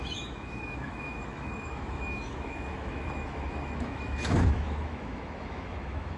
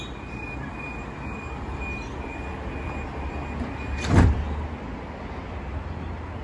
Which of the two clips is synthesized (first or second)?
first